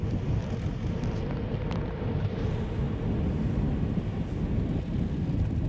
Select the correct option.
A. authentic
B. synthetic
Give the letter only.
A